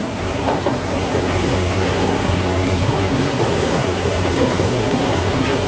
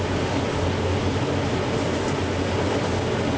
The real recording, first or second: second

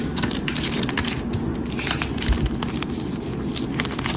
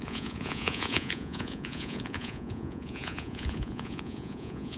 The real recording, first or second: first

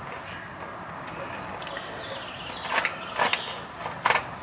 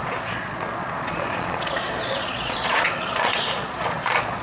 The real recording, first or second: first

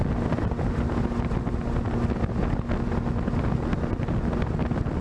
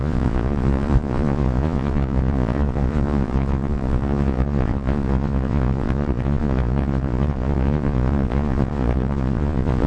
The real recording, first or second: first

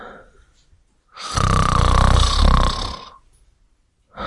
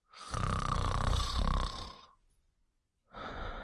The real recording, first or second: first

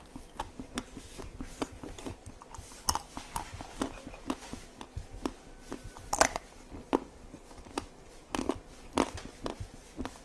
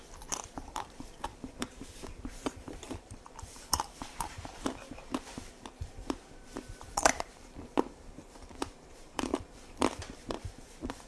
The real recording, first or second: first